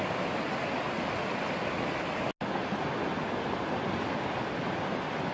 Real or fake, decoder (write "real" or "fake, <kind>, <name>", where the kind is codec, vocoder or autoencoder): real